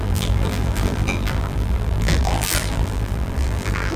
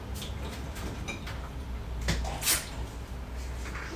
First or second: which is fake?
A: first